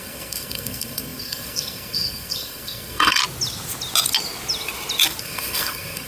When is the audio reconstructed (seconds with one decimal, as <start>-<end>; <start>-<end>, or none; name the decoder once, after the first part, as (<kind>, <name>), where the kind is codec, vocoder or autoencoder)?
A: 0.0-3.2 (codec, SNAC); 5.2-6.1